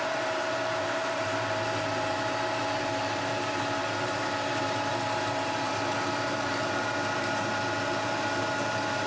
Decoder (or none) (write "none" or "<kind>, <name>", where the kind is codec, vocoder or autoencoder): vocoder, BigVGAN v2